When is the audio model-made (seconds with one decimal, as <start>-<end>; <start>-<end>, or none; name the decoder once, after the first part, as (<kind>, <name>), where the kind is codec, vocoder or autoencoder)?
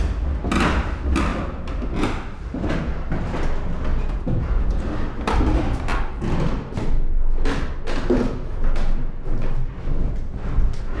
3.9-4.8 (vocoder, Vocos)